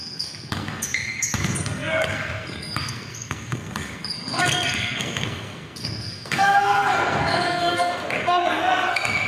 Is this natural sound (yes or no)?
no